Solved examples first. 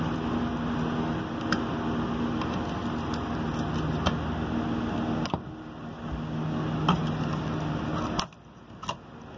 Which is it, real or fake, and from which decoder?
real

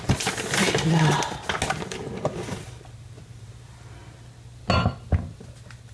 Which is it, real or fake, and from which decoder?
real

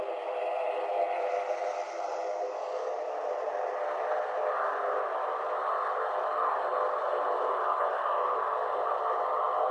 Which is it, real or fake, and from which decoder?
real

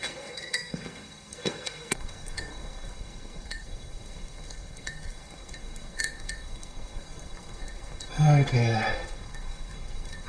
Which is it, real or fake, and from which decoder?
fake, codec, SNAC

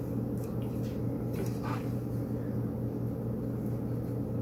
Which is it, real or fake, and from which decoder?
real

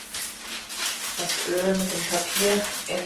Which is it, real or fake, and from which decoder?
real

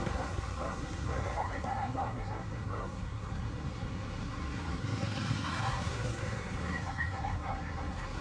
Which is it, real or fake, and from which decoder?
fake, codec, SNAC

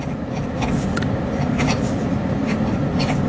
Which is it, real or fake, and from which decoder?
real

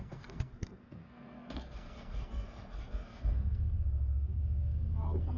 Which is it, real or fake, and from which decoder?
fake, codec, SNAC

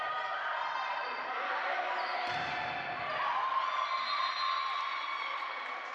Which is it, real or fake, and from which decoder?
real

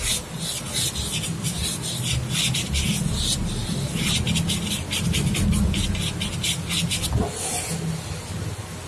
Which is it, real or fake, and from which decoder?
real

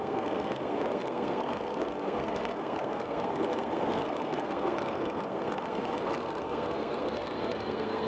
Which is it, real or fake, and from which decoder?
fake, codec, SNAC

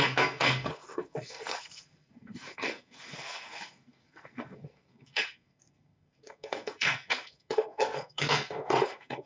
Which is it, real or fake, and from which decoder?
fake, codec, SNAC